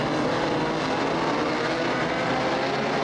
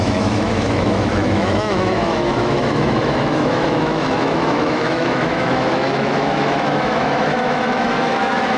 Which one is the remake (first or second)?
second